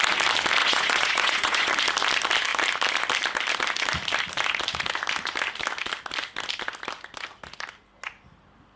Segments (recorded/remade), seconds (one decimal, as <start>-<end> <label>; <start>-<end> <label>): 0.0-0.6 recorded; 0.6-1.7 remade; 1.7-8.8 recorded